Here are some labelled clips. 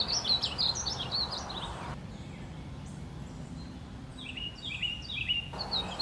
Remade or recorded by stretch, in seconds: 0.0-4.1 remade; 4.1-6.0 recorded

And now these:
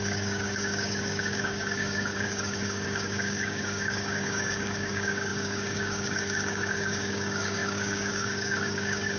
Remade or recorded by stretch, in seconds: 0.0-9.2 remade

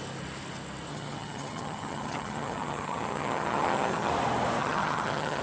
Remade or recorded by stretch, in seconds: 0.0-0.9 recorded; 0.9-4.1 remade; 4.1-4.6 recorded; 4.6-5.4 remade

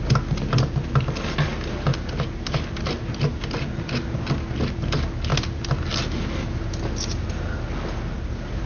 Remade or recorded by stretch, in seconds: 0.0-8.7 recorded

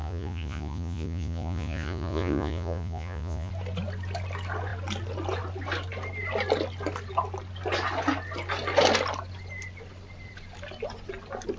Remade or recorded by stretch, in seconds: 0.0-3.5 remade; 3.5-11.6 recorded